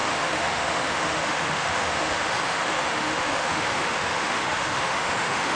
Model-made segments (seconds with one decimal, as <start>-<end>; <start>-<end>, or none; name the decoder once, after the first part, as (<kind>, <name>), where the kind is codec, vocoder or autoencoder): 0.0-5.6 (autoencoder, DAC-VAE)